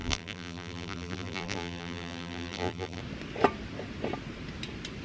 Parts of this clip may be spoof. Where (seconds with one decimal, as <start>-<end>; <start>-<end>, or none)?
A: 0.0-3.0